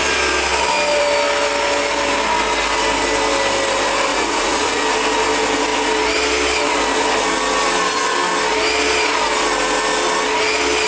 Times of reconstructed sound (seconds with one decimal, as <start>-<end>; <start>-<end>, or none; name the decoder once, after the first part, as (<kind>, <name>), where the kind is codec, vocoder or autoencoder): 4.1-4.8 (vocoder, Vocos)